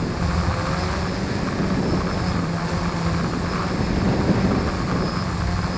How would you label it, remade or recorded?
recorded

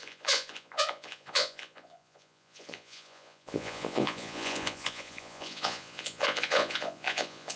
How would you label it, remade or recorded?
remade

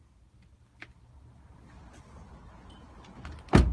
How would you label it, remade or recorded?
recorded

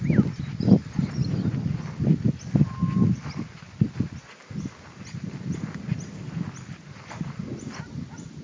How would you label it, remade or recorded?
recorded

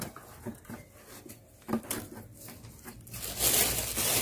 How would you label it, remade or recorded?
recorded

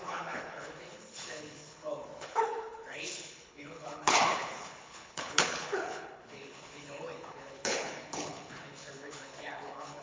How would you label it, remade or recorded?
remade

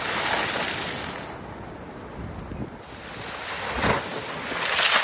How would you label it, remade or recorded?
recorded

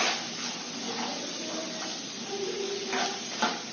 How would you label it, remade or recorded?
recorded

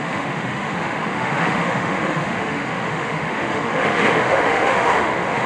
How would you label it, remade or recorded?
remade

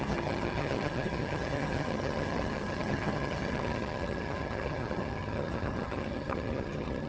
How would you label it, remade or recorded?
remade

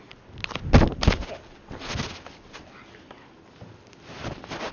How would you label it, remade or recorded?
recorded